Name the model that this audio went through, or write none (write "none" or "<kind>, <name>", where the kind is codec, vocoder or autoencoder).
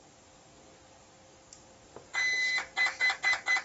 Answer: none